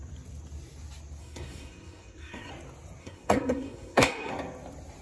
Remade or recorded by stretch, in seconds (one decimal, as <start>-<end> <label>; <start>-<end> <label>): 0.0-1.2 recorded; 1.2-2.5 remade; 2.5-3.0 recorded; 3.0-4.3 remade; 4.3-5.0 recorded